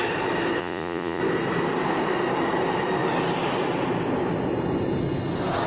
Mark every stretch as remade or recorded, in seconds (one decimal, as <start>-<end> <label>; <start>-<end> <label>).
0.0-0.6 recorded; 0.6-1.2 remade; 1.2-5.7 recorded